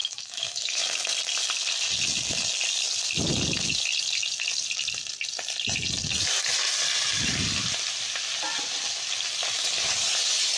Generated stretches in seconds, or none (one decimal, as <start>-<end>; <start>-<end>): 0.0-0.8